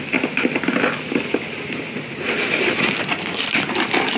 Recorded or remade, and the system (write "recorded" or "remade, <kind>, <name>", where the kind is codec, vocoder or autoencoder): recorded